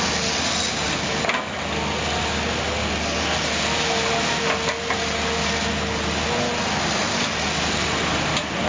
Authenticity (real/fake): real